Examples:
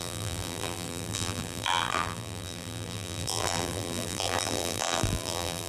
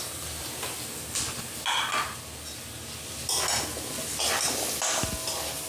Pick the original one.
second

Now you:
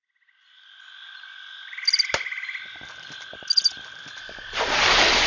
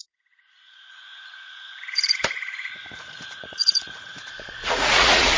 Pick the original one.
first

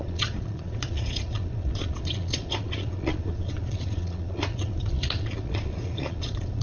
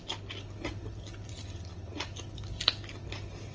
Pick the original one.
second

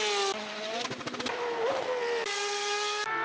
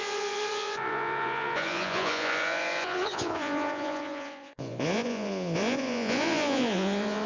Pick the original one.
first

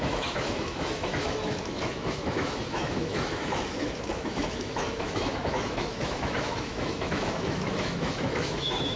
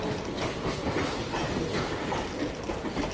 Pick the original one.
second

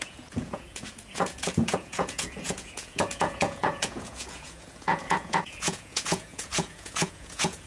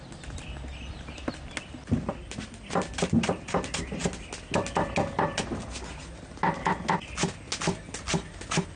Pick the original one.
second